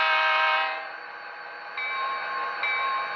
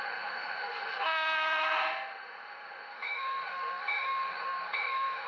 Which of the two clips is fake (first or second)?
second